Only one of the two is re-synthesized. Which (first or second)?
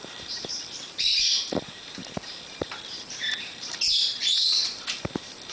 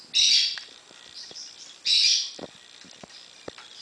first